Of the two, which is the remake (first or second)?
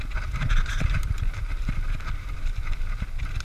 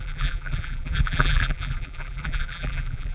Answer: second